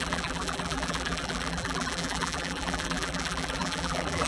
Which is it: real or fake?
fake